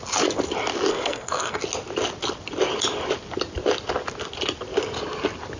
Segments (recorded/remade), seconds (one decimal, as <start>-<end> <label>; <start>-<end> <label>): 0.0-0.9 recorded; 0.9-1.6 remade; 1.6-5.6 recorded